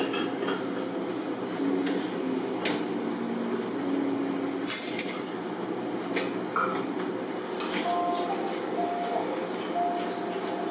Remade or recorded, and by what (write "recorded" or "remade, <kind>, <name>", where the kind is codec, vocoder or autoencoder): recorded